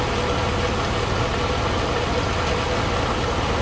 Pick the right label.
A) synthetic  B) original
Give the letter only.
B